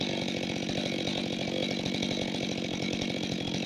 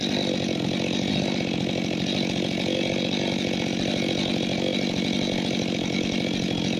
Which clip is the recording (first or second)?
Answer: second